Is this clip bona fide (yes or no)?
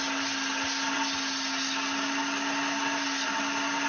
yes